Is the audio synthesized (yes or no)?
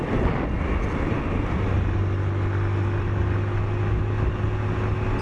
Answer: no